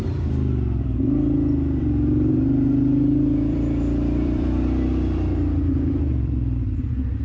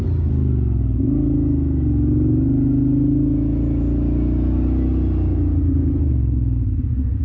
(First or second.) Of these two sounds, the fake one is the first